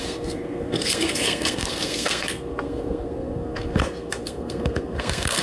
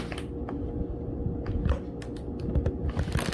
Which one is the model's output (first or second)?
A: first